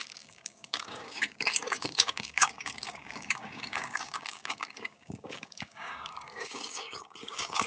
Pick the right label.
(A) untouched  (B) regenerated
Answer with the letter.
B